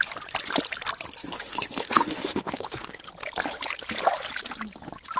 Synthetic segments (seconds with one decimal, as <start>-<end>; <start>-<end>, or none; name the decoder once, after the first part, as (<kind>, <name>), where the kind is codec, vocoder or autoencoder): 1.2-3.0 (autoencoder, DAC-VAE)